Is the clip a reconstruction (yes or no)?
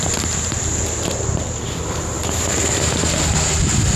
yes